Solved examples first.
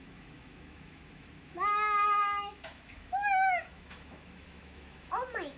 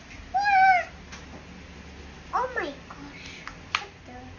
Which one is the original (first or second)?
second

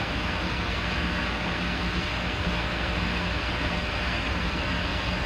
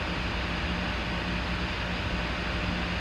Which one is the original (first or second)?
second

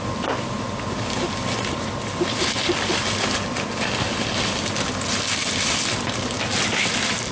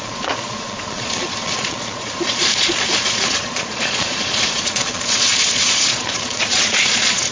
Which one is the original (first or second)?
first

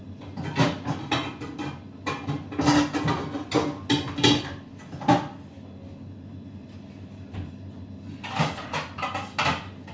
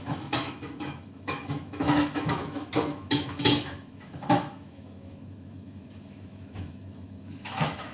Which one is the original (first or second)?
first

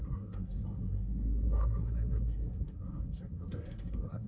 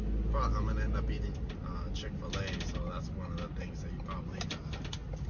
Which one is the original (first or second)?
second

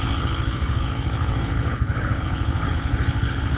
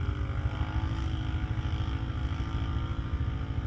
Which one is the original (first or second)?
second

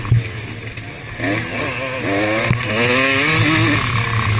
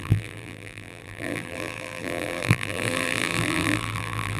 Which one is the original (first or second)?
first